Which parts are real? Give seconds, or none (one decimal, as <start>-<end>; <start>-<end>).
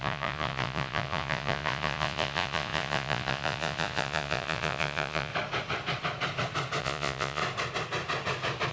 5.3-6.8; 7.4-8.7